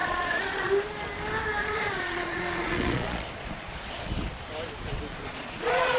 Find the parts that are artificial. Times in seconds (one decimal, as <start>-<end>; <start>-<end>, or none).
0.0-0.7; 1.6-4.1; 5.1-6.0